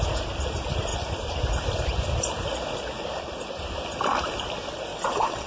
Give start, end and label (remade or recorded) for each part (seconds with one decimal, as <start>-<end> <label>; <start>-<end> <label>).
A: 0.0-4.9 recorded; 4.9-5.5 remade